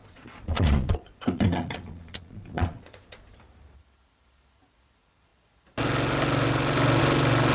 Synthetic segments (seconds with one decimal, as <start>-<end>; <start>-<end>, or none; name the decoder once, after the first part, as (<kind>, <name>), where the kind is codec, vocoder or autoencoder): 0.0-3.4 (vocoder, Vocos)